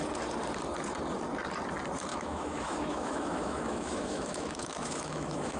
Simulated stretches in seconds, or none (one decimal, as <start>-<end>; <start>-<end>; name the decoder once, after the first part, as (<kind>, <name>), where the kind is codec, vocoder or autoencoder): 2.1-5.6 (autoencoder, DAC-VAE)